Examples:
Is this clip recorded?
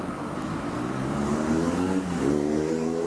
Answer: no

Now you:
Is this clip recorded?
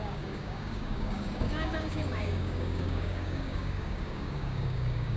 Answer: no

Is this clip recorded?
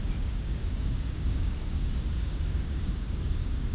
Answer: no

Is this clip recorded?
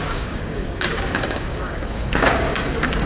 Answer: no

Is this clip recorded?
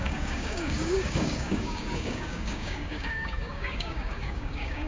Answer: no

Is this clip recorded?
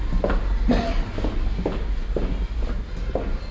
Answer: yes